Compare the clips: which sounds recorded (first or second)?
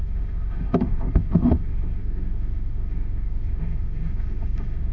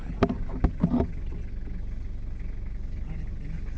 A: second